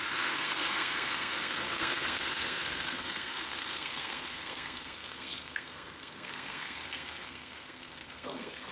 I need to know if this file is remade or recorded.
remade